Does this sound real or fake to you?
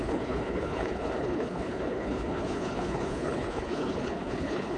fake